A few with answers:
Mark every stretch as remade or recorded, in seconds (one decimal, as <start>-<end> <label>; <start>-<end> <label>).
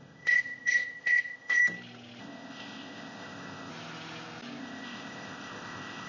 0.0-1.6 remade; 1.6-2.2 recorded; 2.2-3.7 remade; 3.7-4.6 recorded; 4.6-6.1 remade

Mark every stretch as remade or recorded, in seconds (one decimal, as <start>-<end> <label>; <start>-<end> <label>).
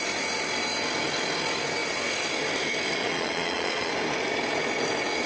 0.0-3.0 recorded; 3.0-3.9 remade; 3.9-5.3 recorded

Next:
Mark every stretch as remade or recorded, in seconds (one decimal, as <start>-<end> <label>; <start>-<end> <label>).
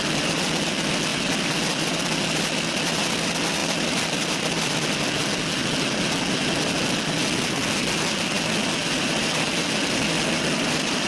0.0-11.1 recorded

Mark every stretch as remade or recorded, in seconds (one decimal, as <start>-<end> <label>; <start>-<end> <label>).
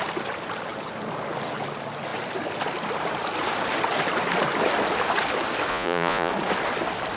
0.0-5.7 recorded; 5.7-6.3 remade; 6.3-7.2 recorded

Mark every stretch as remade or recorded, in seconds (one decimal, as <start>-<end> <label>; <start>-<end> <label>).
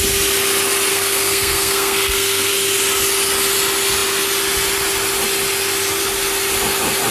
0.0-0.9 recorded; 0.9-2.5 remade; 2.5-7.1 recorded